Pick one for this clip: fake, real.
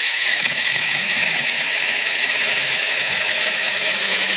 fake